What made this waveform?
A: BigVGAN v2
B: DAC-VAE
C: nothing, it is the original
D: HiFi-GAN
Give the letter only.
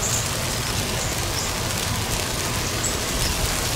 C